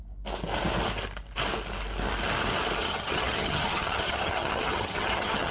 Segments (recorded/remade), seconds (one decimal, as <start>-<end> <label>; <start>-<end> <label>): 0.0-2.8 recorded; 2.8-5.5 remade